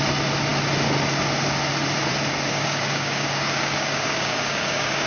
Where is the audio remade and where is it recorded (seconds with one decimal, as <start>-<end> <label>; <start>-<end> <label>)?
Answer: 0.0-2.5 recorded; 2.5-5.1 remade